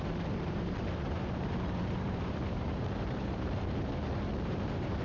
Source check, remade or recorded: remade